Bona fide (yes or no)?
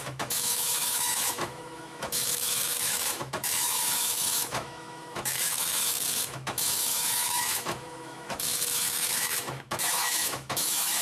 no